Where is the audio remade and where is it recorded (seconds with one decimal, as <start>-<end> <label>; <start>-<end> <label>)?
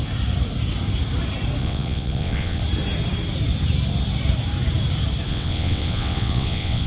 0.0-1.6 recorded; 1.6-2.6 remade; 2.6-5.3 recorded; 5.3-6.9 remade